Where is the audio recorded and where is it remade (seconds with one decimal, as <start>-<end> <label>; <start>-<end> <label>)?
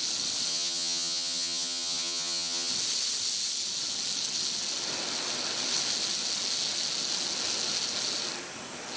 0.0-0.5 recorded; 0.5-2.7 remade; 2.7-9.0 recorded